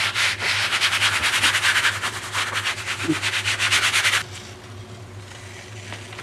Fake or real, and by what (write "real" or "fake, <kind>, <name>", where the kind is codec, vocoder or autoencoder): real